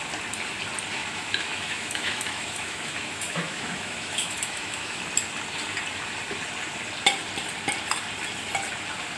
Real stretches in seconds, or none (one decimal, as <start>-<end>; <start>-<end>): 0.0-1.0; 5.0-9.2